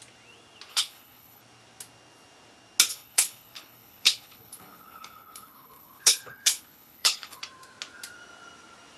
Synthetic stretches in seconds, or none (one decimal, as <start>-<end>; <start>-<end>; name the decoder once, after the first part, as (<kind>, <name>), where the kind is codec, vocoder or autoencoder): 0.7-1.4 (codec, HILCodec); 2.9-7.4